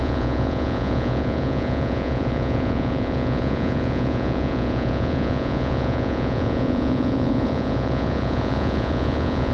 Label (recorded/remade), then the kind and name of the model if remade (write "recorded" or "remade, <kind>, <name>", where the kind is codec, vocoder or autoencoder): remade, vocoder, Vocos